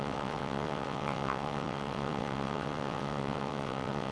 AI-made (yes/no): yes